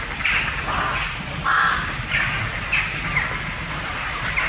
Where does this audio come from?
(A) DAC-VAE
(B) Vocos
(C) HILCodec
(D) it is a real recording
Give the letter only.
D